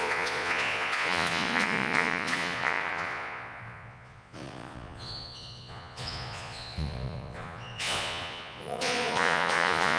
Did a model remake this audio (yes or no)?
yes